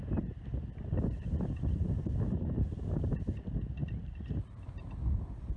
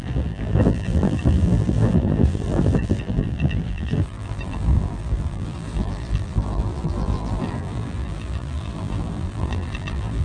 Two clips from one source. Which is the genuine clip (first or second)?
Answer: first